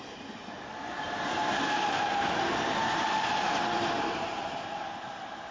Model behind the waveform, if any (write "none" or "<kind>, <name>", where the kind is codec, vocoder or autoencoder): vocoder, BigVGAN v2